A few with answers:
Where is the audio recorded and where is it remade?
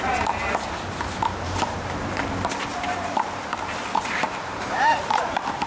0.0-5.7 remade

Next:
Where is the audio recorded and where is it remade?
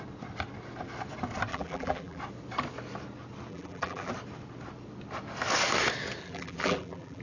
0.0-1.5 recorded; 1.5-2.2 remade; 2.2-3.5 recorded; 3.5-4.1 remade; 4.1-6.2 recorded; 6.2-7.2 remade